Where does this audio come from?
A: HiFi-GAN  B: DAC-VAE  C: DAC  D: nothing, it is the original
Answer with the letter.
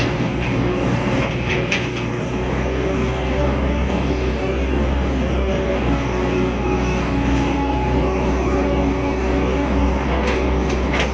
C